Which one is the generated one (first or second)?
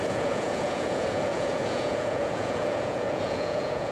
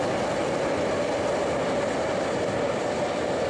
first